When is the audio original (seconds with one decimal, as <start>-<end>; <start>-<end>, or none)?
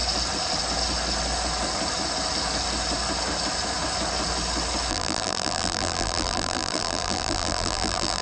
0.0-4.9